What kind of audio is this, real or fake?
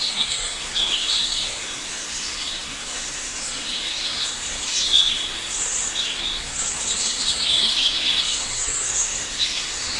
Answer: fake